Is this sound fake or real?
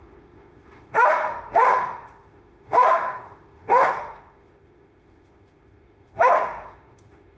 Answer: fake